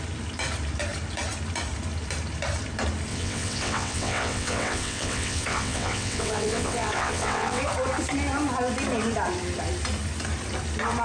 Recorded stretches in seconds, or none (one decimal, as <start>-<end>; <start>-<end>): 0.0-3.1; 7.6-11.0